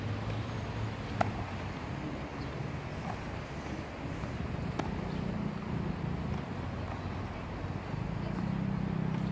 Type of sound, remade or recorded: recorded